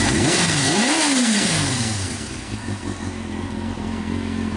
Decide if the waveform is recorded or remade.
remade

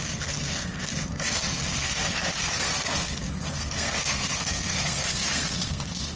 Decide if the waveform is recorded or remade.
remade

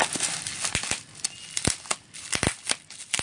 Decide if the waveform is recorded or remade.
recorded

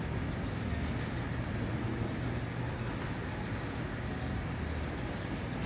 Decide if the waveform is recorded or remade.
recorded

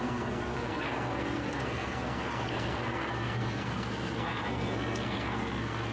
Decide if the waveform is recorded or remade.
remade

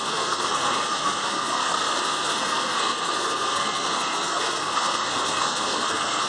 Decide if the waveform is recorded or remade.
remade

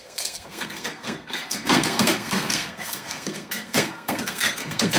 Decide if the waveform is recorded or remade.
remade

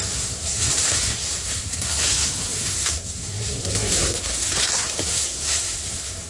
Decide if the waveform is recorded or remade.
remade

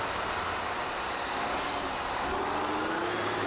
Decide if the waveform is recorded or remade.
recorded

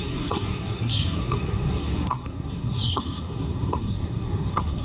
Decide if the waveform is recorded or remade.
remade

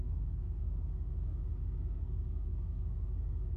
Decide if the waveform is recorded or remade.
remade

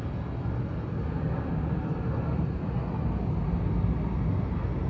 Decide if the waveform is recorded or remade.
recorded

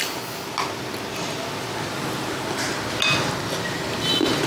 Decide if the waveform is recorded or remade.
recorded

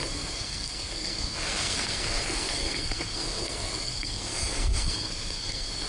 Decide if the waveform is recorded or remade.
remade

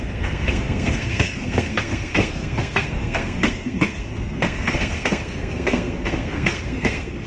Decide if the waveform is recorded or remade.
remade